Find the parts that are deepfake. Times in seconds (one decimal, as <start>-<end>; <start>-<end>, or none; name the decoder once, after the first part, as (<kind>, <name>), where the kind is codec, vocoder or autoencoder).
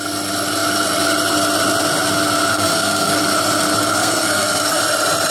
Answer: 2.5-3.2 (codec, SNAC); 3.8-4.8